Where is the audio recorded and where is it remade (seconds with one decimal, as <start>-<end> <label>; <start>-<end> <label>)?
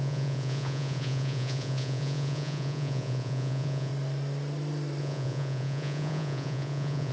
0.0-3.9 remade; 3.9-5.0 recorded; 5.0-7.1 remade